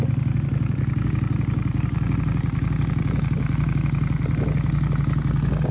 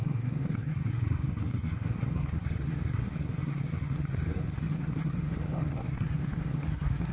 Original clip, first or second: first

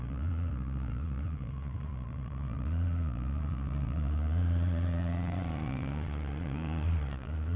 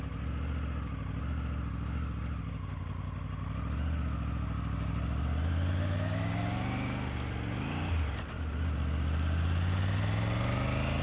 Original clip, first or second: second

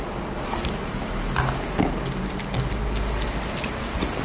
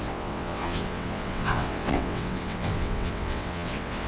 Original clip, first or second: first